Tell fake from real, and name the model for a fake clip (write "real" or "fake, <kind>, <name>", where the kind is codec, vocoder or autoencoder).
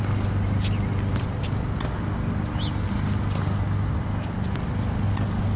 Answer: real